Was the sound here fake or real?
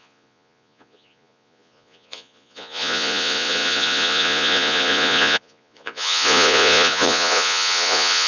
fake